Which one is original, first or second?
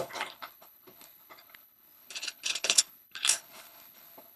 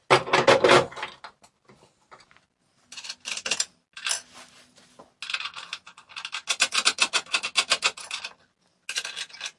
second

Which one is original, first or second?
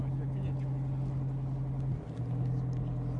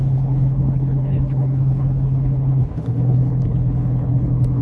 first